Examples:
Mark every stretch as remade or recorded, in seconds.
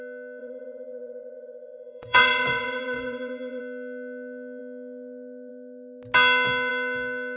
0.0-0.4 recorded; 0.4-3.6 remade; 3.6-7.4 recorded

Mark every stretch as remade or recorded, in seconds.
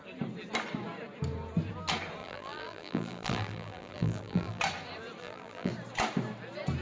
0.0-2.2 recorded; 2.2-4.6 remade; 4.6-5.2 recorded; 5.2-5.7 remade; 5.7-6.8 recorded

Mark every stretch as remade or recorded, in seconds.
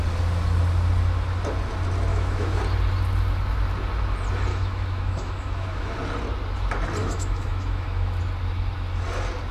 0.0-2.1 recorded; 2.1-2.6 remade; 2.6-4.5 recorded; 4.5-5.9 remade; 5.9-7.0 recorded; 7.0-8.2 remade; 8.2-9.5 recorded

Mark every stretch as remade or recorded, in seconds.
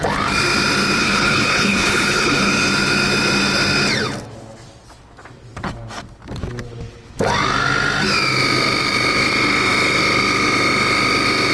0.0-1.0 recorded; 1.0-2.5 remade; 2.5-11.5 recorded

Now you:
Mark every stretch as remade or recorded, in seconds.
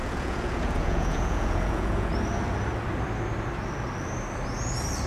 0.0-2.1 remade; 2.1-5.1 recorded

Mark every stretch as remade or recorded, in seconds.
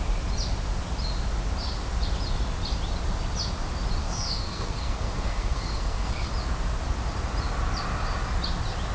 0.0-4.0 recorded; 4.0-6.3 remade; 6.3-8.9 recorded